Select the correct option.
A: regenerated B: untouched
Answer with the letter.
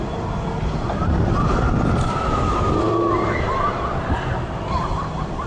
B